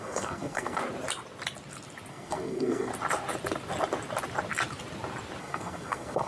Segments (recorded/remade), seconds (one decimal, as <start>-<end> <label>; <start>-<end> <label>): 0.0-0.8 remade; 0.8-2.1 recorded; 2.1-2.9 remade; 2.9-5.4 recorded; 5.4-6.3 remade